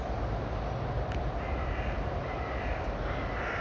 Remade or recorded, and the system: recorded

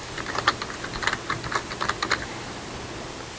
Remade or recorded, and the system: recorded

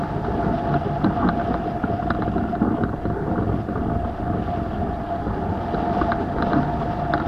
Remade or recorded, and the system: recorded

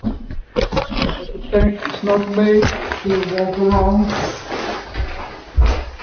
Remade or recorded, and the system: recorded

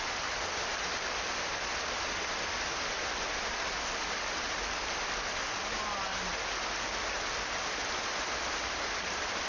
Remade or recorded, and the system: recorded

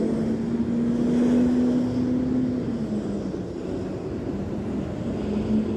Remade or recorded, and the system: recorded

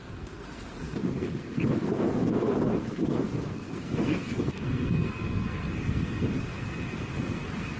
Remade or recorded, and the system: remade, codec, SNAC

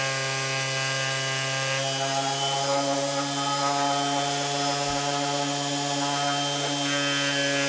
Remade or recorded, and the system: recorded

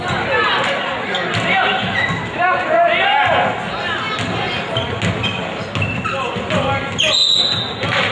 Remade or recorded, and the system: recorded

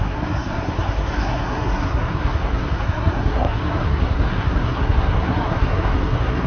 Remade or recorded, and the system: remade, codec, SNAC